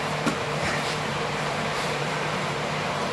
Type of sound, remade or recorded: remade